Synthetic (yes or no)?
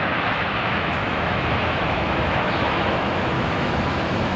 yes